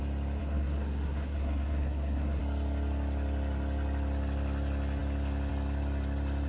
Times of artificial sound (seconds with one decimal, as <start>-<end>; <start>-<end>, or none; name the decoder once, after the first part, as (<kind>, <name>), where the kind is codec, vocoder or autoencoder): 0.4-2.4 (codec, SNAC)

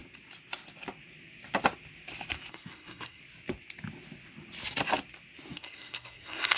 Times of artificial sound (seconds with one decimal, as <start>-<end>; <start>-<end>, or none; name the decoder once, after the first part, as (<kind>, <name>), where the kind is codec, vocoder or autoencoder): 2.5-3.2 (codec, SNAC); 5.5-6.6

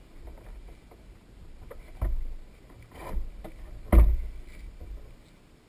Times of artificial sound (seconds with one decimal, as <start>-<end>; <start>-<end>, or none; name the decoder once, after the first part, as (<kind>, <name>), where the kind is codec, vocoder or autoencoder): none